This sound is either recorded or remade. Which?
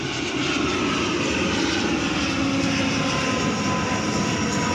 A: recorded